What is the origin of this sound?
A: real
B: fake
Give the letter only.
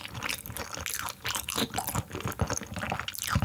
A